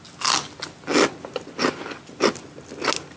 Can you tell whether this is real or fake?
real